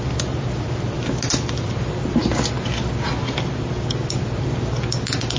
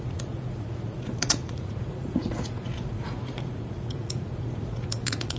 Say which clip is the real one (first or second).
first